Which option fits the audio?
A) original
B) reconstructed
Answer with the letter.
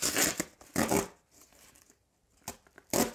A